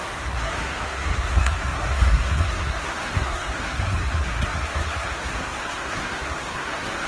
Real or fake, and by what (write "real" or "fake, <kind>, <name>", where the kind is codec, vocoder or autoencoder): fake, codec, SNAC